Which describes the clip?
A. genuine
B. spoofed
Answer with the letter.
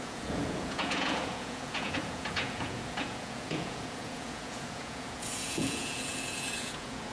B